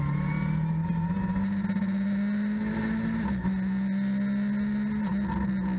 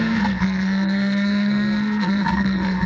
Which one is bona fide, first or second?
first